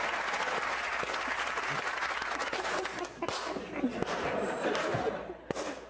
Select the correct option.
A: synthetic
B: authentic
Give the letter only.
B